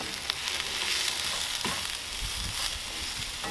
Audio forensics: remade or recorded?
recorded